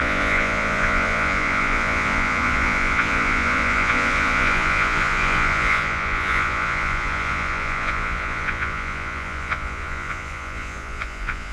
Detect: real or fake fake